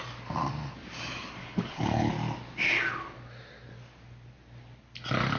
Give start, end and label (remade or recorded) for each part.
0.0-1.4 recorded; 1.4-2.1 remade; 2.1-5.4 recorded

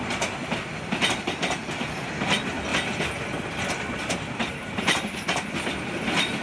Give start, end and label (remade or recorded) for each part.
0.0-6.4 recorded

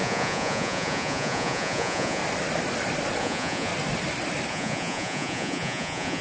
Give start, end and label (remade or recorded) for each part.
0.0-2.2 remade; 2.2-3.2 recorded; 3.2-3.7 remade; 3.7-4.5 recorded; 4.5-6.2 remade

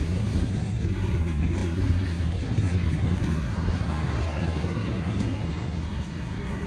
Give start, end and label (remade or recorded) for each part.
0.0-6.7 remade

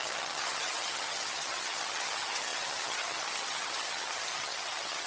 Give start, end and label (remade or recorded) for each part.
0.0-5.1 remade

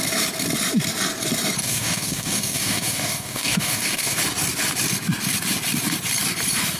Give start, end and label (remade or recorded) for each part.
0.0-1.6 recorded; 1.6-4.2 remade; 4.2-6.8 recorded

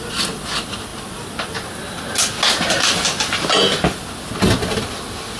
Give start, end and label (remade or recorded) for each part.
0.0-5.4 recorded